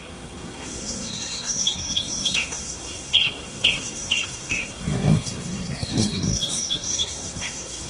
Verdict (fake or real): fake